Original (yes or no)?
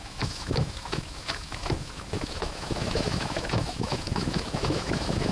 no